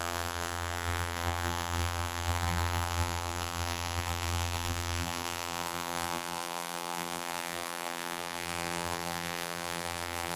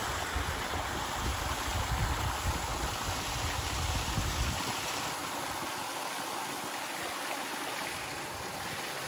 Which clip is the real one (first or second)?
second